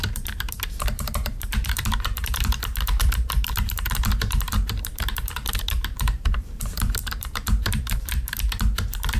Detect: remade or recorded remade